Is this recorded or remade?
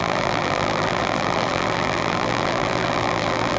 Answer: remade